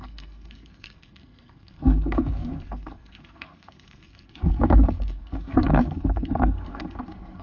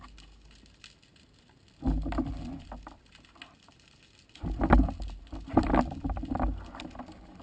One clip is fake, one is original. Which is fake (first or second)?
first